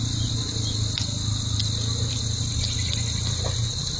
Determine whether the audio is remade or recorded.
recorded